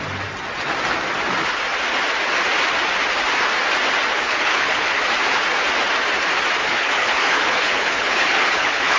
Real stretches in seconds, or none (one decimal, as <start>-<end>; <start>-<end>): 0.0-4.1; 5.0-6.6